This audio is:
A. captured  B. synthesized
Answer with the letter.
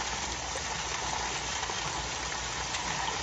A